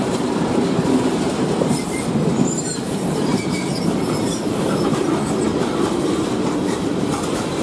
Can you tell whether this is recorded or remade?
remade